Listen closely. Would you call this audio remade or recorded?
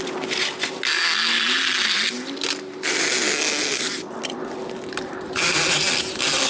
recorded